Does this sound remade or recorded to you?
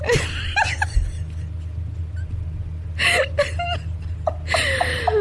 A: recorded